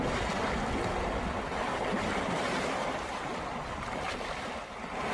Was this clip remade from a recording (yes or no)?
no